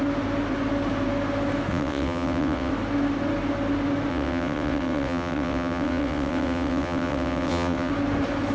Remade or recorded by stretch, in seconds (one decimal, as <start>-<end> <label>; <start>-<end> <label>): 0.0-1.7 recorded; 1.7-2.7 remade; 2.7-4.1 recorded; 4.1-7.9 remade; 7.9-8.5 recorded